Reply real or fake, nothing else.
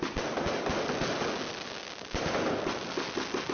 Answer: real